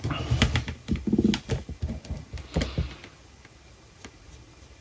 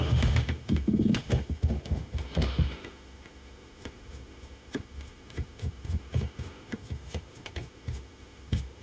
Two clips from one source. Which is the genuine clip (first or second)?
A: first